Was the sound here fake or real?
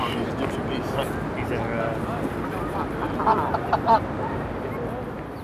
real